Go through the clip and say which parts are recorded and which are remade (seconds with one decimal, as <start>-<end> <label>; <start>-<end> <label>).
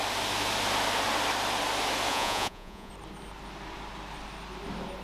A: 0.0-2.1 recorded; 2.1-2.9 remade; 2.9-5.0 recorded